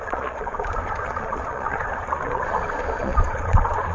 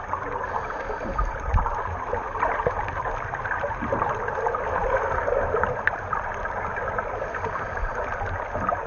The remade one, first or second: first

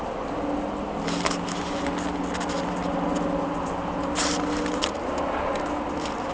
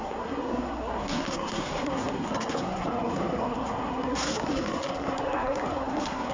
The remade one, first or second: second